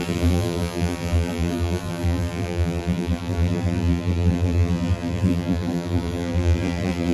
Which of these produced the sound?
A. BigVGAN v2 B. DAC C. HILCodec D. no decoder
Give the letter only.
A